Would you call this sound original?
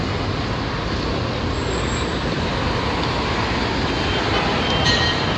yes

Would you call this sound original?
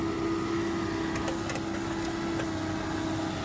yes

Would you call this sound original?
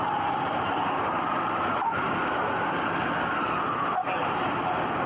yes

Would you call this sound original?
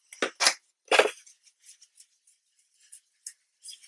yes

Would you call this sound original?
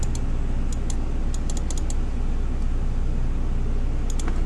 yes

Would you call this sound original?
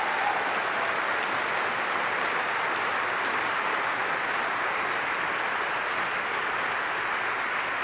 yes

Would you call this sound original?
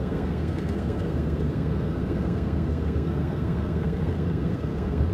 no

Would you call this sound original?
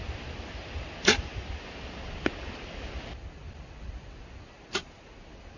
yes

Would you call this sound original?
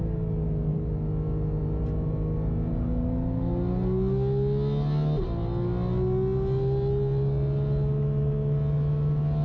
yes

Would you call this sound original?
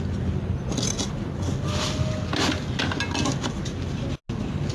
yes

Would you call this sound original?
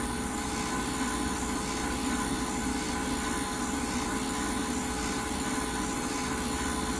yes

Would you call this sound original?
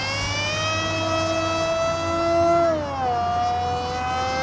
yes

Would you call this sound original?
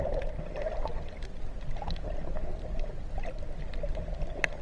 yes